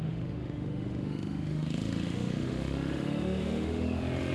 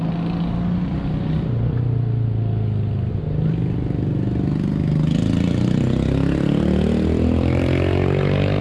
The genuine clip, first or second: second